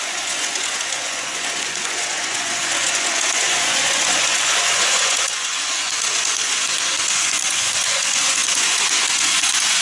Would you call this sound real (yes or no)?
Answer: no